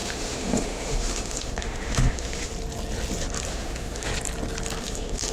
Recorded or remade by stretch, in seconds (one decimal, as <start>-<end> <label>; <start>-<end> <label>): 0.0-2.5 remade; 2.5-3.5 recorded; 3.5-4.1 remade; 4.1-4.8 recorded; 4.8-5.3 remade